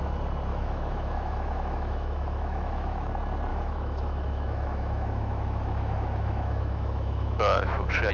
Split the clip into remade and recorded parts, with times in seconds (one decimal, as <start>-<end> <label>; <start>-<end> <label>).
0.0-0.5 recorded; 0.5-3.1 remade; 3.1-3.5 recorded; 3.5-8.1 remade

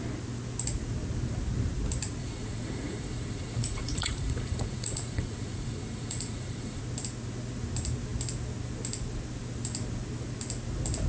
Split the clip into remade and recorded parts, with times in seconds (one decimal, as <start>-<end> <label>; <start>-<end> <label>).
0.0-2.2 recorded; 2.2-6.8 remade; 6.8-11.1 recorded

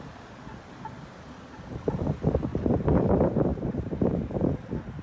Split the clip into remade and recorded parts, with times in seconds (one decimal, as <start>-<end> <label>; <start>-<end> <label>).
0.0-2.5 recorded; 2.5-4.2 remade; 4.2-5.0 recorded

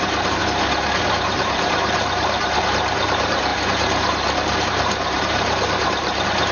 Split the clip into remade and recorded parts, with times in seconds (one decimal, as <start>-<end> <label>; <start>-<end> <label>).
0.0-0.4 remade; 0.4-1.0 recorded; 1.0-3.5 remade; 3.5-4.6 recorded; 4.6-6.5 remade